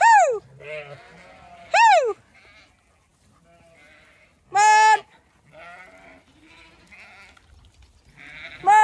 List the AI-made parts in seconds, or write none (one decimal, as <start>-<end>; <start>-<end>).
none